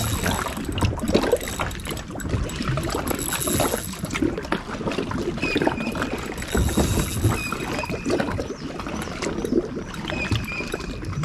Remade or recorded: recorded